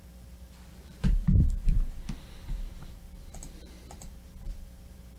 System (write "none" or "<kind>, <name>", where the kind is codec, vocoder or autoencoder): vocoder, BigVGAN v2